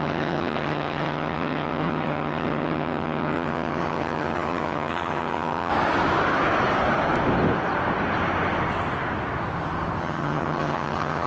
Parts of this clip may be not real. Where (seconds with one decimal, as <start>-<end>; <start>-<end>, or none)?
0.0-5.7; 10.0-11.3